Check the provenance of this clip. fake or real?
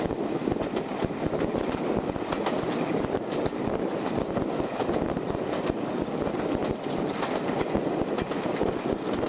real